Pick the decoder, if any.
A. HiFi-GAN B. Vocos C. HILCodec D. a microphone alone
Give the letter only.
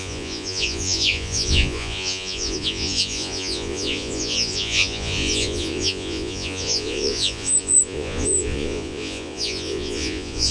B